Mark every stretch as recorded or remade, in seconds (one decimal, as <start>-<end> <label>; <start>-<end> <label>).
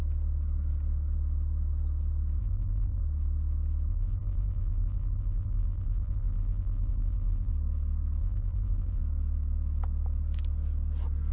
0.0-2.4 recorded; 2.4-3.0 remade; 3.0-3.9 recorded; 3.9-7.5 remade; 7.5-8.2 recorded; 8.2-9.0 remade; 9.0-11.3 recorded